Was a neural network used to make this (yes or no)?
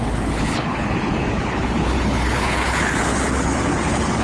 yes